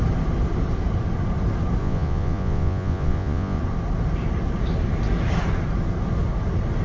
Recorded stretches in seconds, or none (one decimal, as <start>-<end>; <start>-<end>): 0.0-1.8; 3.6-6.8